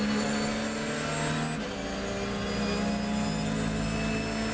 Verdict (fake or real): real